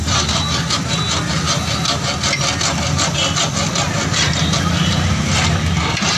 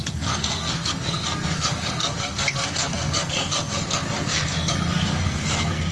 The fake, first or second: second